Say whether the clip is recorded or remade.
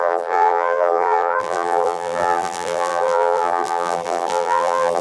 remade